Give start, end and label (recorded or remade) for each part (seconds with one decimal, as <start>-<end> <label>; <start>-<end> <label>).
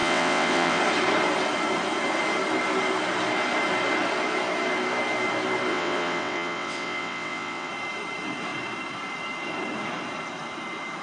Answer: 0.0-0.8 remade; 0.8-5.7 recorded; 5.7-7.7 remade; 7.7-11.0 recorded